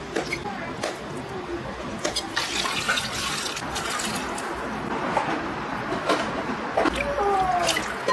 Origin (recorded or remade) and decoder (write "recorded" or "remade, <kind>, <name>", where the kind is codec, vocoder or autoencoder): recorded